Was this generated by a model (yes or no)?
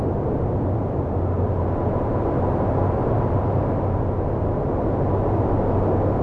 no